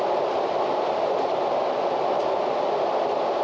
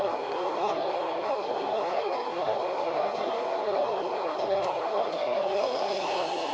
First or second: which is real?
first